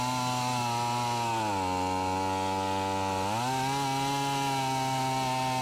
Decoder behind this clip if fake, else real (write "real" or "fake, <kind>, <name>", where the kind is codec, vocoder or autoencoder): real